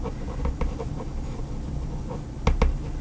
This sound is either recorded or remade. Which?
recorded